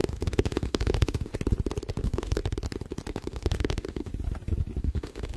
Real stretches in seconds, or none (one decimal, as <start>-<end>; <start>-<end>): 1.3-2.0; 2.4-3.1; 4.1-4.8